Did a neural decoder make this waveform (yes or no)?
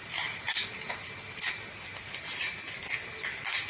no